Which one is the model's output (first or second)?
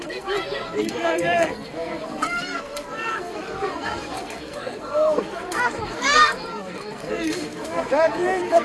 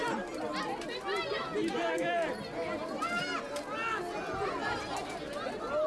first